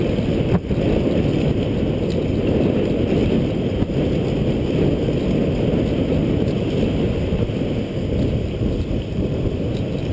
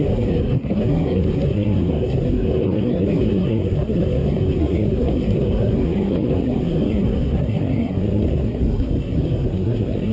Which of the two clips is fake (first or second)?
second